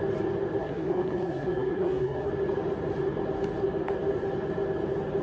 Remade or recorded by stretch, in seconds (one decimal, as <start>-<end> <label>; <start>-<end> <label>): 0.0-0.6 recorded; 0.6-2.3 remade; 2.3-5.2 recorded